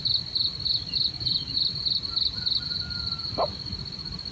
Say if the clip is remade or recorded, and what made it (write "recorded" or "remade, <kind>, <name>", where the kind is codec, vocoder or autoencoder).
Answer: recorded